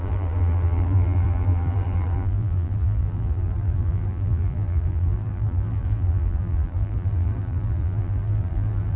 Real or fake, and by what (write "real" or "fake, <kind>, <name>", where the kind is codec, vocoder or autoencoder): fake, vocoder, BigVGAN v2